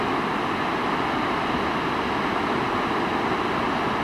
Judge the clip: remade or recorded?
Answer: recorded